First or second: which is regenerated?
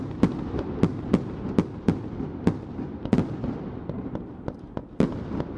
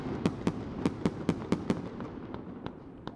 second